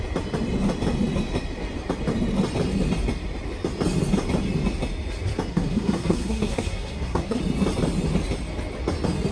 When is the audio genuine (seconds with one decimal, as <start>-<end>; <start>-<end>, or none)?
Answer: 0.0-5.5; 7.4-9.3